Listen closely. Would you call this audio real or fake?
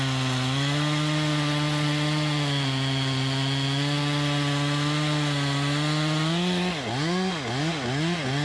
real